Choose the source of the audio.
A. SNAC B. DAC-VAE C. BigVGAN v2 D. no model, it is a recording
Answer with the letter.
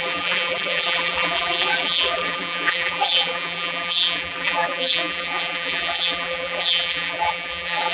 C